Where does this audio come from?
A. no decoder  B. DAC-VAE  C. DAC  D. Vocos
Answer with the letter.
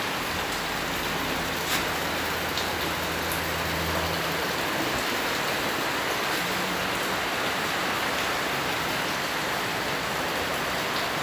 A